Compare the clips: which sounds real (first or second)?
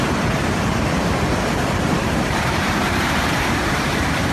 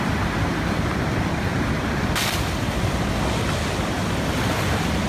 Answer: second